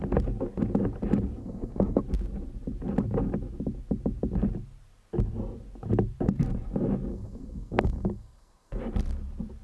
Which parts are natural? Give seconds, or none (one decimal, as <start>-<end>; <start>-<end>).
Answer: 0.0-1.4; 2.0-7.1; 8.8-9.6